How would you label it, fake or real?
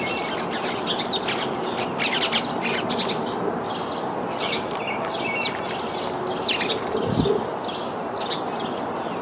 real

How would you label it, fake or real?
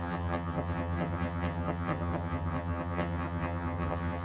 fake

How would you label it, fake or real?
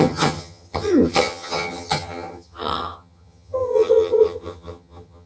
fake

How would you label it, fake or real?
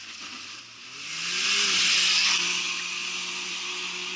real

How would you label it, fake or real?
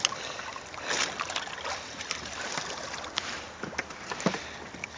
real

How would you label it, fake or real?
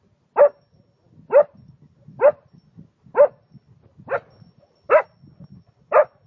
real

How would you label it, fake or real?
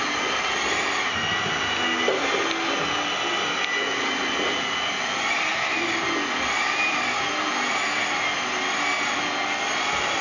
real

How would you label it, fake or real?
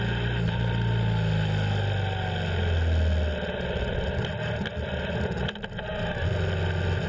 real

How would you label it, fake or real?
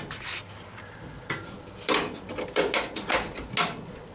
real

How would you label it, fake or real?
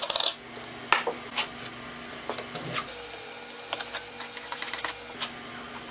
real